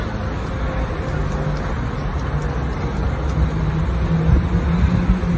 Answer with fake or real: real